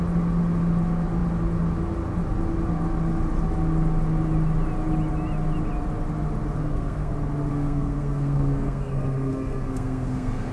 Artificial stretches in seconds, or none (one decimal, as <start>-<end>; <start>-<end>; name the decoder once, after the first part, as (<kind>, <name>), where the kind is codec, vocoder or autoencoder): 6.6-7.1 (codec, SNAC); 7.5-10.5